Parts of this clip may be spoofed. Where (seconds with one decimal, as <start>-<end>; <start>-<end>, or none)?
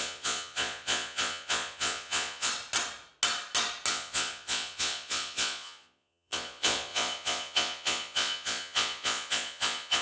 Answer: 0.0-2.5; 3.9-10.0